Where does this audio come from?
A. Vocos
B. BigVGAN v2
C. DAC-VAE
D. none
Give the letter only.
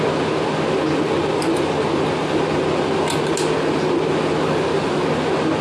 D